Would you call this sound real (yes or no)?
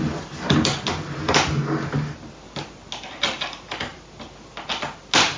yes